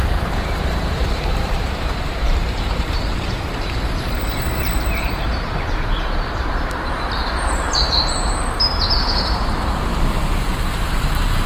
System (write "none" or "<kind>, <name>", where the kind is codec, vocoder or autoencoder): vocoder, BigVGAN v2